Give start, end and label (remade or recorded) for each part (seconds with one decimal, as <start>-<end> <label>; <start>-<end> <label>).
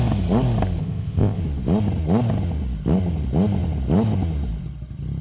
0.0-0.8 recorded; 0.8-1.4 remade; 1.4-5.2 recorded